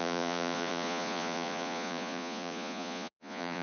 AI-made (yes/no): yes